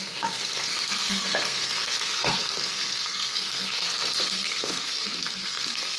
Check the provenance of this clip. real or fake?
fake